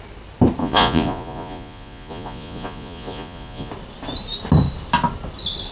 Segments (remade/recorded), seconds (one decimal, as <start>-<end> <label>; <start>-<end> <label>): 0.0-0.6 recorded; 0.6-3.7 remade; 3.7-5.7 recorded